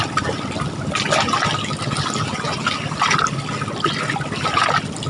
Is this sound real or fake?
real